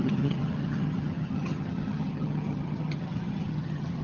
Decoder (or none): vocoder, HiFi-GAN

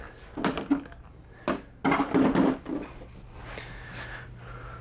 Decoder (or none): none